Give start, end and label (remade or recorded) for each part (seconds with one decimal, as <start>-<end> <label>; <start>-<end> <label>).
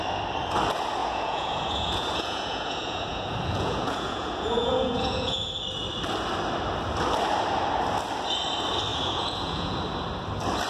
0.0-1.0 recorded; 1.0-5.5 remade; 5.5-8.9 recorded; 8.9-9.8 remade; 9.8-10.7 recorded